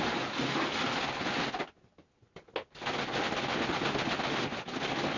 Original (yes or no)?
yes